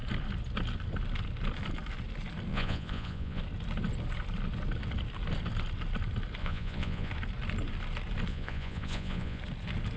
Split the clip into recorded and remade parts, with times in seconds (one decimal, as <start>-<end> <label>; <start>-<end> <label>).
0.0-2.5 recorded; 2.5-3.4 remade; 3.4-6.4 recorded; 6.4-7.1 remade; 7.1-8.3 recorded; 8.3-9.4 remade; 9.4-10.0 recorded